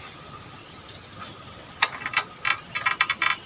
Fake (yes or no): no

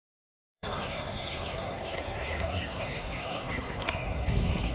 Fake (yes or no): yes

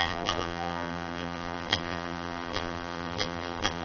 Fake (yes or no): yes